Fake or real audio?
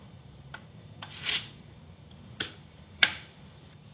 fake